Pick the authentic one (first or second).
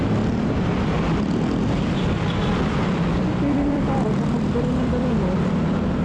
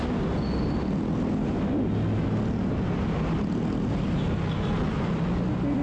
second